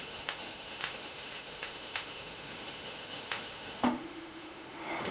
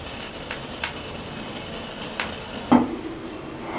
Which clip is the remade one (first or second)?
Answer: first